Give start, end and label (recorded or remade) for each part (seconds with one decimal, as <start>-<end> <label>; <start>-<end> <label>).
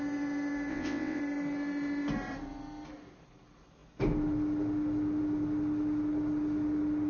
0.0-0.7 recorded; 0.7-1.2 remade; 1.2-7.1 recorded